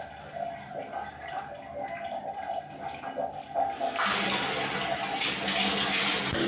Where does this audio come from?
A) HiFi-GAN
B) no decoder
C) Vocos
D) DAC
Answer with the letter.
B